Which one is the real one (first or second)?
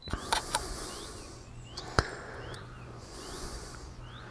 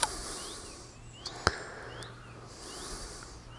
second